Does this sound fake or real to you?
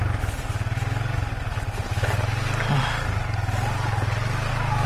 real